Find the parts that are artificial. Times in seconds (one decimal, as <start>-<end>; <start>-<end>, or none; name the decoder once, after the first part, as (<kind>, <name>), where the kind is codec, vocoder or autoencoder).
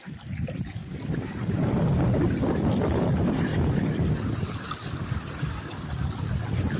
0.8-1.5 (vocoder, BigVGAN v2)